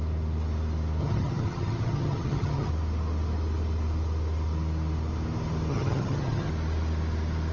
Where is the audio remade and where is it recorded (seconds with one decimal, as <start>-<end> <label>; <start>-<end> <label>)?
0.0-1.0 recorded; 1.0-2.7 remade; 2.7-5.7 recorded; 5.7-6.5 remade; 6.5-7.5 recorded